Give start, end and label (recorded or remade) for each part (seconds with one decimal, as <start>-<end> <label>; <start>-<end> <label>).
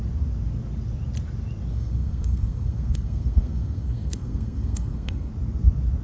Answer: 0.0-1.7 recorded; 1.7-5.3 remade; 5.3-6.0 recorded